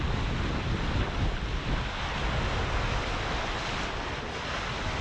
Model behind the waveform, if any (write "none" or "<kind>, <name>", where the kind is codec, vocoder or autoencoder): none